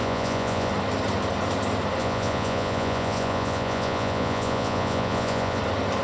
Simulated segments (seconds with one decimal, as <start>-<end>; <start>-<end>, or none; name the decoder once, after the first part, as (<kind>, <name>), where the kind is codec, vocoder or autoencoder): 0.0-0.7 (vocoder, Vocos); 2.0-5.6